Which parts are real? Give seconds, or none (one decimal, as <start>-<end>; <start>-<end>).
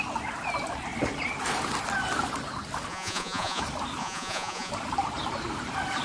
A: 0.0-2.9; 3.6-4.0; 4.7-6.0